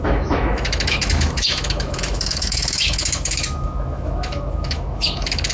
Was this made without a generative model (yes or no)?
no